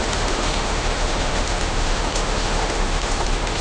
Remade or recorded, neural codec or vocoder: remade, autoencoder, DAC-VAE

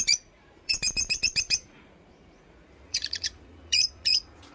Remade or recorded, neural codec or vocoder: remade, vocoder, Vocos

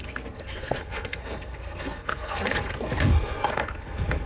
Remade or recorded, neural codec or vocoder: remade, codec, SNAC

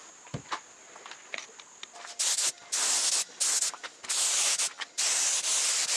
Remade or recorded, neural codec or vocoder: recorded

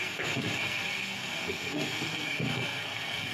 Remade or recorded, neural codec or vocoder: remade, codec, SNAC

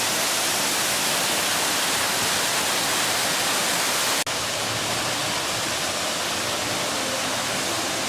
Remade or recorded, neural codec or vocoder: recorded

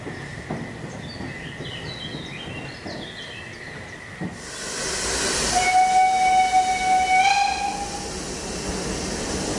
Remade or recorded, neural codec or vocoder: recorded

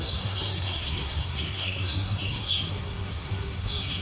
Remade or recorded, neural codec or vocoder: remade, codec, SNAC